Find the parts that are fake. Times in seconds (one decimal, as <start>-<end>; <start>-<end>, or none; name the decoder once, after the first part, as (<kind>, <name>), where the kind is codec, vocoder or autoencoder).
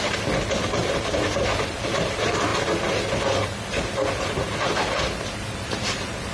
none